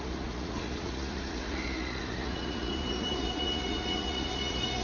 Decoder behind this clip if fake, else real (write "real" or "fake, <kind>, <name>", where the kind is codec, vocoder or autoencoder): fake, vocoder, Vocos